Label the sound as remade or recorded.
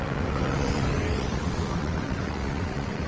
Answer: remade